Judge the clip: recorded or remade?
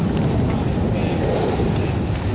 recorded